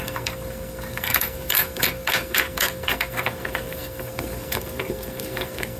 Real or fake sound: fake